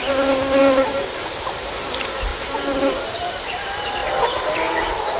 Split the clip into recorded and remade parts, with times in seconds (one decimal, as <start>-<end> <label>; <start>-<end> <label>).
0.0-4.0 remade; 4.0-5.2 recorded